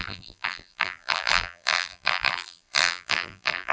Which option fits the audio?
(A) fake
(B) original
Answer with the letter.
A